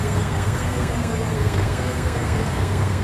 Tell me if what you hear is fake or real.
fake